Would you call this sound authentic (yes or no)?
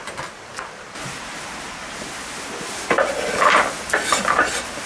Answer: yes